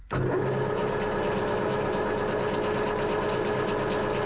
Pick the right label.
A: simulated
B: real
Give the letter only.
B